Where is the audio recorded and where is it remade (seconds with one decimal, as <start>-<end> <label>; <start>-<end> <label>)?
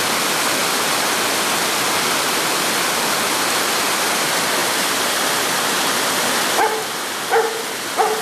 0.0-8.2 recorded